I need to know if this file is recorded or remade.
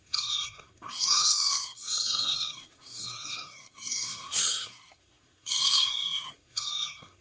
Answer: remade